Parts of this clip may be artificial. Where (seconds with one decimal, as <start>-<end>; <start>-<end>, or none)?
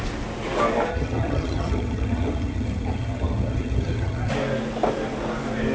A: 0.9-4.3